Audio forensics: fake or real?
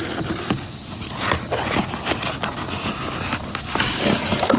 real